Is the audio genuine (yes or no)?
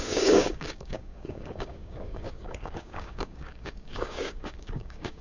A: no